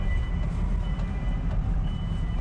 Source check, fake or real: real